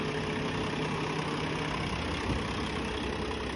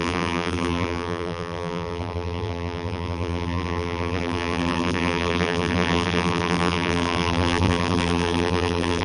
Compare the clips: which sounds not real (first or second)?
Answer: second